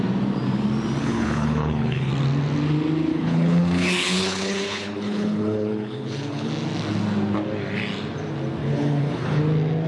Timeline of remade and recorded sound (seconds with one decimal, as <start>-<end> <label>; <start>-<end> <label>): 0.0-1.0 recorded; 1.0-2.1 remade; 2.1-3.1 recorded; 3.1-6.5 remade; 6.5-8.6 recorded; 8.6-9.4 remade; 9.4-9.9 recorded